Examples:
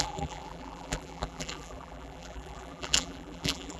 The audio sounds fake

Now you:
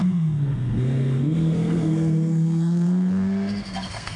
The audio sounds fake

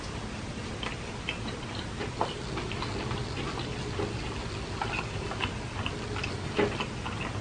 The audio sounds real